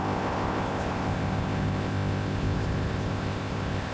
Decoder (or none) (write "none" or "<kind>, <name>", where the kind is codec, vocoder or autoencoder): codec, ZipCodec